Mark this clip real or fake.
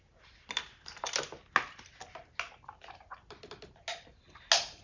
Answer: real